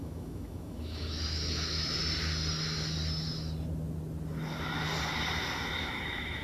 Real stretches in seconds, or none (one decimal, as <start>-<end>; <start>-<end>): 2.0-5.8